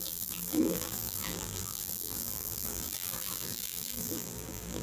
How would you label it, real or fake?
fake